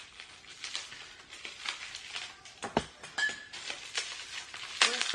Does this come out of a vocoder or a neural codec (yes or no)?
no